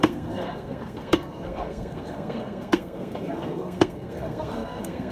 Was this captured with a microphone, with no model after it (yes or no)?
no